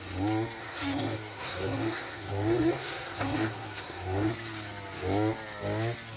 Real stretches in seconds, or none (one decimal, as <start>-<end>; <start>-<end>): 0.0-0.6; 4.3-6.2

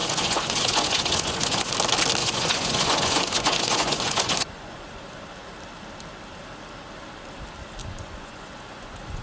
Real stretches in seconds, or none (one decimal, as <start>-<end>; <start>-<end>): 1.7-2.2; 4.9-7.8